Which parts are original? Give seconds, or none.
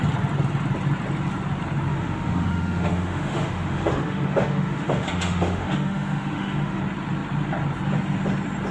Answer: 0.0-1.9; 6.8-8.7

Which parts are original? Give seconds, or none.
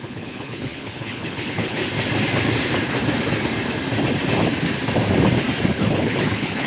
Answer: 1.8-5.8